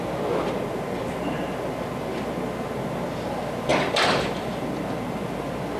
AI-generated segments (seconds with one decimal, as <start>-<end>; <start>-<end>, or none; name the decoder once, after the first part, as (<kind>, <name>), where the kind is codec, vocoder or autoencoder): 3.7-4.7 (vocoder, BigVGAN v2)